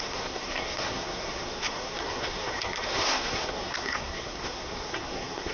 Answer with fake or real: fake